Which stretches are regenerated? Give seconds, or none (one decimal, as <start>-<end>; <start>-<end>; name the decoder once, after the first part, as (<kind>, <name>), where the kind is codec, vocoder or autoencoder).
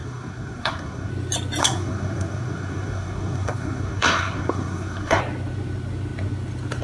0.0-1.1 (codec, SNAC); 1.6-5.2